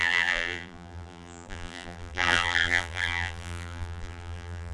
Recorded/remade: remade